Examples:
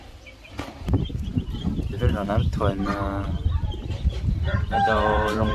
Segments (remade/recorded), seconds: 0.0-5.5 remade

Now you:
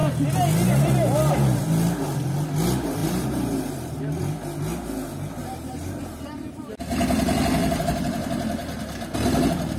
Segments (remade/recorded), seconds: 0.0-3.0 recorded; 3.0-4.0 remade; 4.0-5.4 recorded; 5.4-6.7 remade; 6.7-7.6 recorded; 7.6-8.8 remade; 8.8-9.8 recorded

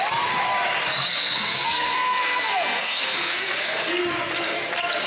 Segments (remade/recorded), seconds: 0.0-0.9 recorded; 0.9-4.0 remade; 4.0-5.1 recorded

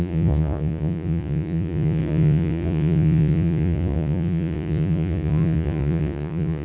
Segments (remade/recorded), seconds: 0.0-6.6 remade

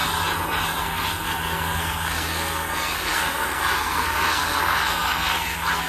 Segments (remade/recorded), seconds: 0.0-0.8 recorded; 0.8-5.9 remade

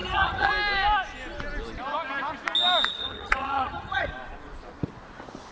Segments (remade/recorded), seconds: 0.0-0.5 remade; 0.5-3.0 recorded; 3.0-4.1 remade; 4.1-5.5 recorded

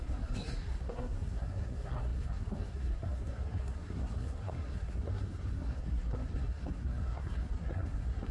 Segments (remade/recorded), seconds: 0.0-8.3 remade

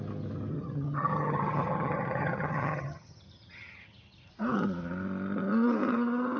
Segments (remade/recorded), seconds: 0.0-0.5 recorded; 0.5-4.3 remade; 4.3-6.4 recorded